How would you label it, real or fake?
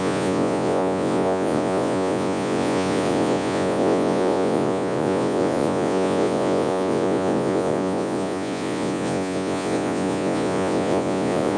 fake